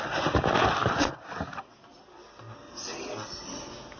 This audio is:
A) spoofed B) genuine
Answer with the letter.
B